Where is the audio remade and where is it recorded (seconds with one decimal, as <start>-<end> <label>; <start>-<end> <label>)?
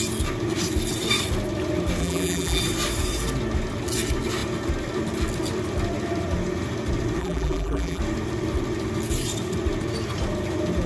0.0-2.0 recorded; 2.0-2.6 remade; 2.6-7.2 recorded; 7.2-8.0 remade; 8.0-10.9 recorded